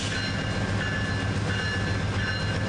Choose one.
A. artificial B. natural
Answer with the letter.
B